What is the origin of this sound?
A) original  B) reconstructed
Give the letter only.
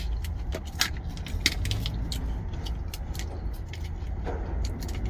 A